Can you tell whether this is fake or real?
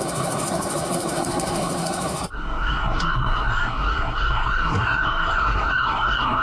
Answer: fake